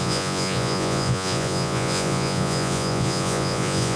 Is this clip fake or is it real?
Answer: fake